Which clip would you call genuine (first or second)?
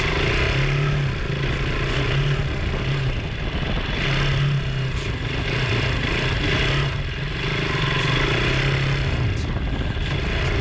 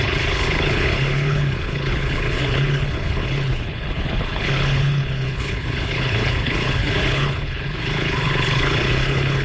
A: first